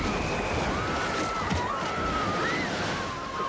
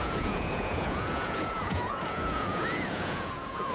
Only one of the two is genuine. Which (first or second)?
first